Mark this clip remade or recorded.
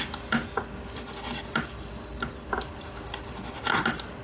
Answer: recorded